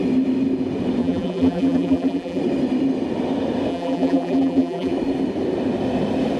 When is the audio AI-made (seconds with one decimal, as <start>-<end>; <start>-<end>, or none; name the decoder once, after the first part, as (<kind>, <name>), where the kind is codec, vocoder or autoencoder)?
1.0-2.4 (vocoder, BigVGAN v2); 3.7-4.9